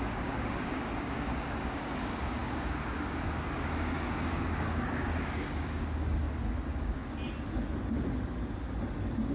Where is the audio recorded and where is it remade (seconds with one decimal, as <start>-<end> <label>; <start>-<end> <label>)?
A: 0.0-7.0 remade; 7.0-9.3 recorded